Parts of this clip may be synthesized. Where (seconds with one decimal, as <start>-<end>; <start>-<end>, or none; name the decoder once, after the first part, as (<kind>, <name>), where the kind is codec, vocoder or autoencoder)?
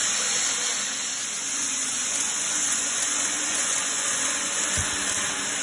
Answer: 1.2-4.6 (vocoder, Vocos)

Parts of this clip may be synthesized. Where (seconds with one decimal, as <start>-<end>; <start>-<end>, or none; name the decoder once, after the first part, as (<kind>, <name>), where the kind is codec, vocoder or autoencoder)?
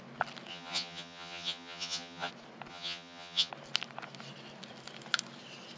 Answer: 0.5-2.3 (vocoder, HiFi-GAN); 2.7-3.5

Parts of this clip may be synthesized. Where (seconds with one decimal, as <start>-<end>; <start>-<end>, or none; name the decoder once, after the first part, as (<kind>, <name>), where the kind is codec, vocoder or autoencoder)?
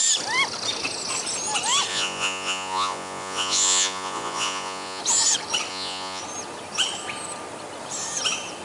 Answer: 1.9-5.0 (vocoder, Vocos); 5.7-6.2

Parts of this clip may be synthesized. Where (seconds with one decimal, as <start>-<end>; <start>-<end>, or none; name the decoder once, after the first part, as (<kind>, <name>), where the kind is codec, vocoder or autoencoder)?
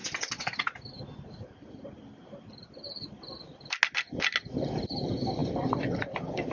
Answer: none